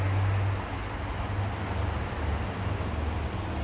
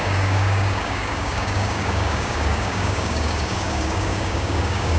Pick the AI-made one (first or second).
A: second